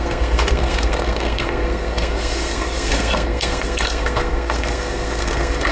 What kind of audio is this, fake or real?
fake